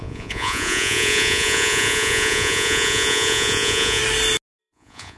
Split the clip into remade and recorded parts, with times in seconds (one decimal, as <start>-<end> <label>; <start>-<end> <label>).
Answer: 0.0-4.0 remade; 4.0-4.6 recorded; 4.6-5.2 remade